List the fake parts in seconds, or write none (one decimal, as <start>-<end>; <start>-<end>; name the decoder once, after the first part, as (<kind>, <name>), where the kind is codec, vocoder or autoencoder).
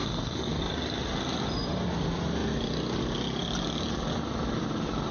0.0-0.6 (codec, SNAC)